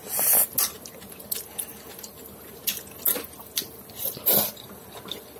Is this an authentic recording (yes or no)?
yes